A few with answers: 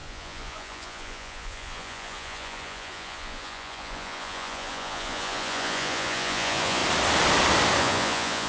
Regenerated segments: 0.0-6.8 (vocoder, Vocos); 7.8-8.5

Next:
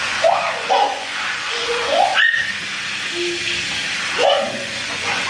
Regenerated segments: 0.0-2.1 (vocoder, Vocos); 4.2-5.3